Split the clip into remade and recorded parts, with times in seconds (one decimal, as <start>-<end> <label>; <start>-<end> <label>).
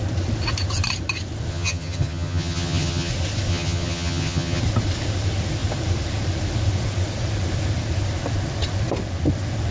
0.0-1.5 recorded; 1.5-3.1 remade; 3.1-3.5 recorded; 3.5-4.6 remade; 4.6-9.7 recorded